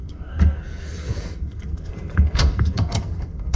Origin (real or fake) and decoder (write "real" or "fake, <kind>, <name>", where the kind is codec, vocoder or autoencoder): fake, codec, SNAC